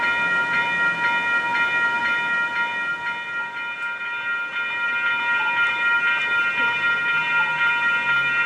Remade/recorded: recorded